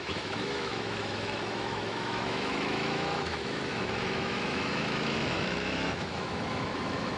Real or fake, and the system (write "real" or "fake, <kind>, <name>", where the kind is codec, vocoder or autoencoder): fake, autoencoder, DAC-VAE